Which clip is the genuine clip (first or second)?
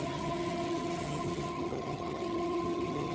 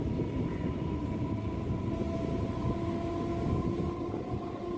second